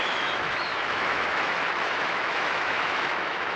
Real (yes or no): no